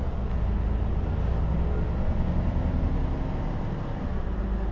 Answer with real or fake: real